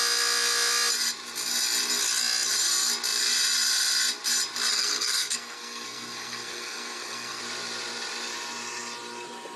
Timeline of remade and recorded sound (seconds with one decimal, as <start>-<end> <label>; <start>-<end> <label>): 0.0-4.7 recorded; 4.7-7.4 remade; 7.4-9.6 recorded

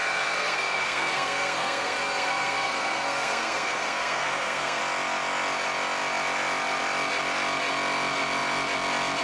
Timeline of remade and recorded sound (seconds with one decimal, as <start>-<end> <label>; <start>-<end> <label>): 0.0-4.8 remade; 4.8-9.2 recorded